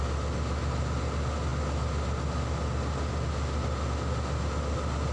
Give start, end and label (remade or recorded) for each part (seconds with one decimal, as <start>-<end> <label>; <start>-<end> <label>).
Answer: 0.0-5.1 recorded